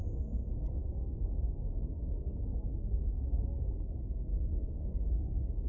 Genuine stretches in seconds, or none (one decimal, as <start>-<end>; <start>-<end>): none